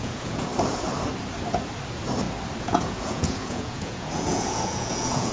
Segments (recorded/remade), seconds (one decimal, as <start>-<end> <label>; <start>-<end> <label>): 0.0-0.5 remade; 0.5-2.6 recorded; 2.6-5.3 remade